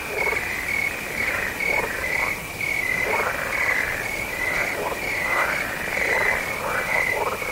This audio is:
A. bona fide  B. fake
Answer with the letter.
A